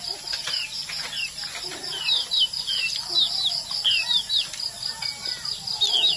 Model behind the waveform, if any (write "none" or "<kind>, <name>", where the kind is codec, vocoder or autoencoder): none